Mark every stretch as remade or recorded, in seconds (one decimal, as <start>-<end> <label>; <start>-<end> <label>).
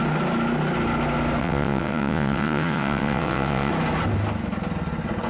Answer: 0.0-1.4 recorded; 1.4-3.7 remade; 3.7-5.3 recorded